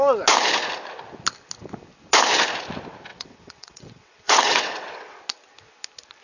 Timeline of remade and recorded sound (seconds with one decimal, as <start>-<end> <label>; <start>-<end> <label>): 0.0-3.1 recorded; 3.1-5.2 remade; 5.2-6.2 recorded